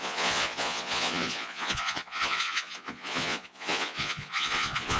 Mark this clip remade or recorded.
remade